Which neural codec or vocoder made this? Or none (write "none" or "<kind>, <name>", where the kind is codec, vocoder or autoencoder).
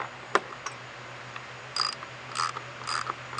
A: none